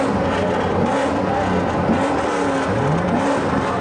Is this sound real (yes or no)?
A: yes